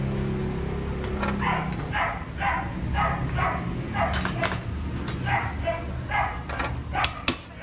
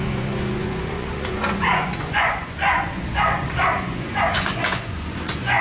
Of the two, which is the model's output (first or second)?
second